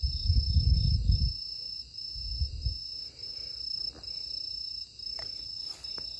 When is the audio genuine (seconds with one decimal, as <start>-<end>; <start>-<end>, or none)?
0.0-3.3; 4.0-6.2